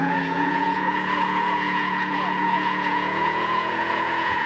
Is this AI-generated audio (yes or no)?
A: yes